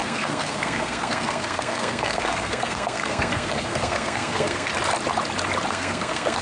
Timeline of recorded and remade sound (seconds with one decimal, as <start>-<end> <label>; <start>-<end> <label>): 0.0-4.7 remade; 4.7-5.7 recorded; 5.7-6.4 remade